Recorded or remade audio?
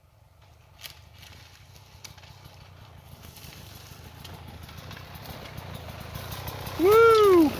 recorded